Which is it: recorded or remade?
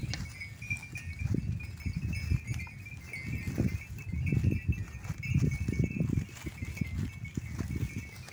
recorded